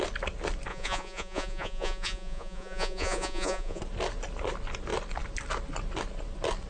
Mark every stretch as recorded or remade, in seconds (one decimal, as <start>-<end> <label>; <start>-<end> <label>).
0.0-0.7 recorded; 0.7-3.8 remade; 3.8-6.7 recorded